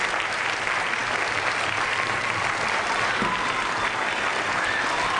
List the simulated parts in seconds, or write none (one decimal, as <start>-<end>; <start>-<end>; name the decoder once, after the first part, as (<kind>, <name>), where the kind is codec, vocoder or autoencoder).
none